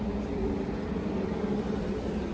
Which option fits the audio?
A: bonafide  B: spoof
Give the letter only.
A